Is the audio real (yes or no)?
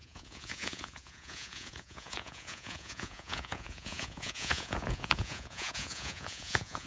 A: no